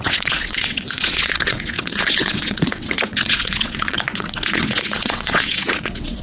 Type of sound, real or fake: fake